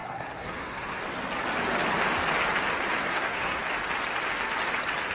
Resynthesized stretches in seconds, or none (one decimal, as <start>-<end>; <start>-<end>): 0.0-1.0; 3.0-3.6